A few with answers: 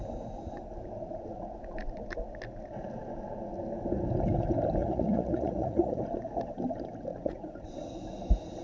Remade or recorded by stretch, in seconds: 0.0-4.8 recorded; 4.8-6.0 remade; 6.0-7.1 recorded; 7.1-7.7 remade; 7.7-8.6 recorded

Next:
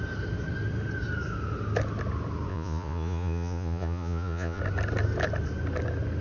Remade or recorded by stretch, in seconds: 0.0-2.5 recorded; 2.5-4.6 remade; 4.6-6.2 recorded

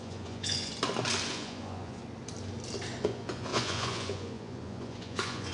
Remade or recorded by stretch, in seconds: 0.0-0.7 remade; 0.7-1.3 recorded; 1.3-2.0 remade; 2.0-3.0 recorded; 3.0-5.5 remade

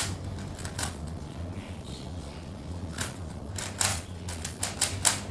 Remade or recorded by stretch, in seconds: 0.0-0.6 recorded; 0.6-3.5 remade; 3.5-3.9 recorded; 3.9-4.6 remade; 4.6-5.3 recorded

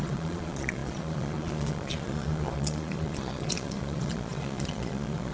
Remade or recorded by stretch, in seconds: 0.0-5.3 remade

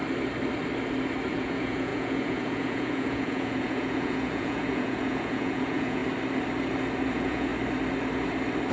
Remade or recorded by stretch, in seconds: 0.0-1.3 recorded; 1.3-6.0 remade; 6.0-7.1 recorded; 7.1-7.5 remade; 7.5-8.7 recorded

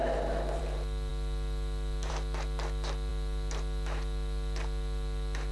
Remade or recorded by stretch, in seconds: 0.0-5.5 recorded

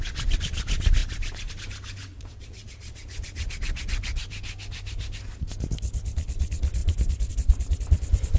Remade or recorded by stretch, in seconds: 0.0-2.1 recorded; 2.1-3.8 remade; 3.8-8.4 recorded